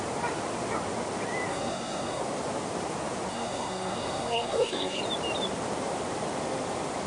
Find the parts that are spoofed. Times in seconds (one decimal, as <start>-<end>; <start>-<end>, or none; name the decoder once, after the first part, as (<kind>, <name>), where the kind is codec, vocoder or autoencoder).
1.5-2.2 (codec, SNAC); 3.3-5.0